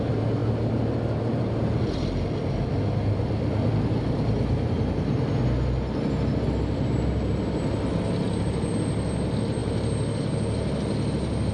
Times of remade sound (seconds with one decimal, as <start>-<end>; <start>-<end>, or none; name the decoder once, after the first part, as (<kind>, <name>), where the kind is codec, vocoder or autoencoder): none